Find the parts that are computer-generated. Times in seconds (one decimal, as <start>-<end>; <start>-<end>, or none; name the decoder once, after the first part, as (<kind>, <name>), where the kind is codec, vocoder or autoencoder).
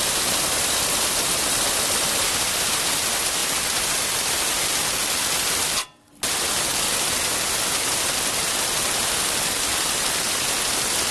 3.4-5.1 (vocoder, BigVGAN v2)